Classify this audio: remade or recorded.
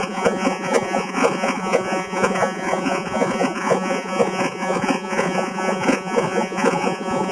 remade